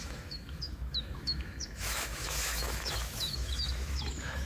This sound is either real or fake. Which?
fake